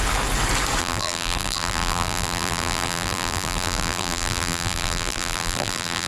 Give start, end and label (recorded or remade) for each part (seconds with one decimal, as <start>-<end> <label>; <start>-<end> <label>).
0.0-0.8 recorded; 0.8-6.1 remade